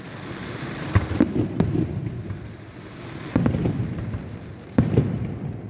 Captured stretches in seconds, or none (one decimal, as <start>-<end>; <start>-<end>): 0.0-0.4; 2.3-3.6; 5.0-5.7